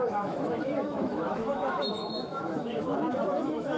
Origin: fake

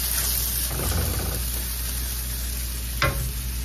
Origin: real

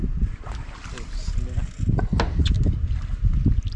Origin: real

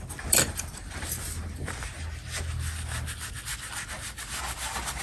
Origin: real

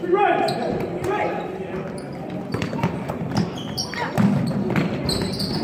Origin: fake